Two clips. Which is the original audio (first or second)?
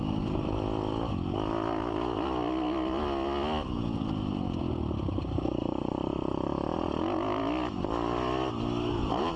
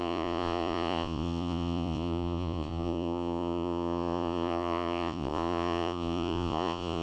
first